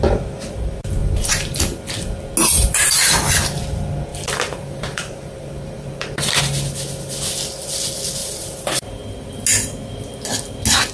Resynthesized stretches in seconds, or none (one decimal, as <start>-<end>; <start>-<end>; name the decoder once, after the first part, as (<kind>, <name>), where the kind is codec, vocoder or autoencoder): 1.0-1.6 (vocoder, BigVGAN v2); 2.4-3.2; 4.1-6.4; 8.2-9.3